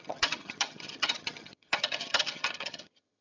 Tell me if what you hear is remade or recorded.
remade